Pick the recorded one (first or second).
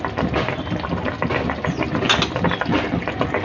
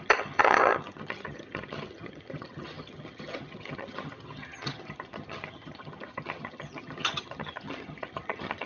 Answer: first